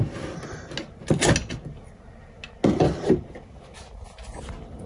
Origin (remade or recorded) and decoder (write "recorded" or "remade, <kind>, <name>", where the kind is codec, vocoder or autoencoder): recorded